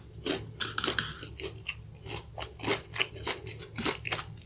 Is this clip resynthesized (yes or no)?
no